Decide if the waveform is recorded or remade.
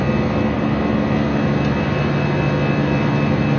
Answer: recorded